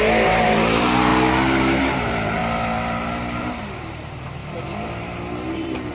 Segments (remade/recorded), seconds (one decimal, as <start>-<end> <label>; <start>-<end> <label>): 0.0-1.1 remade; 1.1-1.8 recorded; 1.8-2.4 remade; 2.4-3.4 recorded; 3.4-4.4 remade; 4.4-5.5 recorded; 5.5-5.9 remade